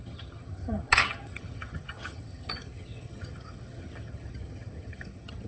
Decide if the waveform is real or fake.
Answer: fake